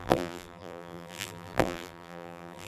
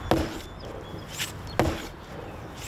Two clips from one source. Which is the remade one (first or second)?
first